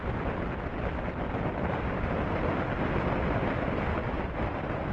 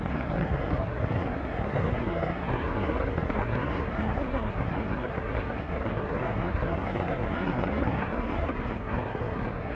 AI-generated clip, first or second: second